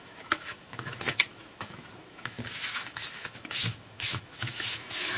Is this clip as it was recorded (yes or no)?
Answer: no